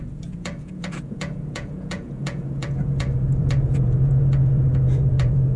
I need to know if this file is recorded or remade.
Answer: remade